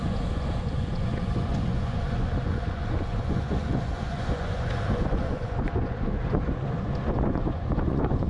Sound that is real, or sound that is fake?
fake